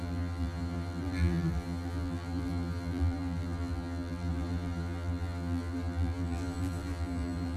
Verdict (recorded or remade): remade